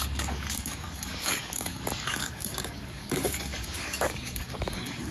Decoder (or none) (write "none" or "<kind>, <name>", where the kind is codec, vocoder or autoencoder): codec, DAC